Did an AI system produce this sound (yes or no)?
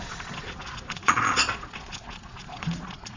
yes